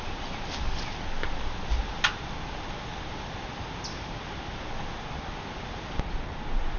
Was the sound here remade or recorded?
recorded